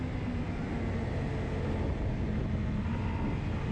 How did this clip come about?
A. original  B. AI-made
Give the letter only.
A